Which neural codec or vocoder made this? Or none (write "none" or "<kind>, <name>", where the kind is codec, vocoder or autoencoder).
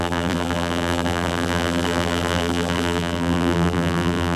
vocoder, BigVGAN v2